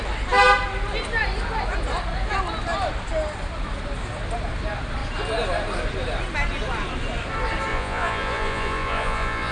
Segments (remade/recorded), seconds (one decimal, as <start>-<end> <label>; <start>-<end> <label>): 0.0-7.7 recorded; 7.7-9.5 remade